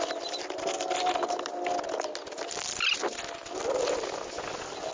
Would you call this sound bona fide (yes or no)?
yes